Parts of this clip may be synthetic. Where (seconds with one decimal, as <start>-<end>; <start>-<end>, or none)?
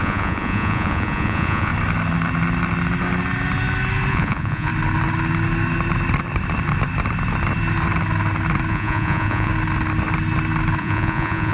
0.0-1.7; 4.1-4.7; 8.7-9.5; 10.8-11.5